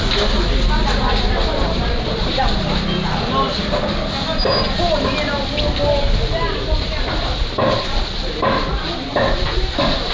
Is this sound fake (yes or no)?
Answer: no